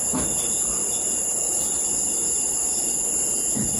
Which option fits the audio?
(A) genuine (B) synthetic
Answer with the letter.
B